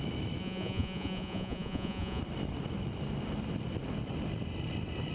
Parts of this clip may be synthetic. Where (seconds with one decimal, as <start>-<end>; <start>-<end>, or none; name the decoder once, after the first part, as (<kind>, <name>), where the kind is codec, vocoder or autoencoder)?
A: 0.4-2.2 (vocoder, Vocos)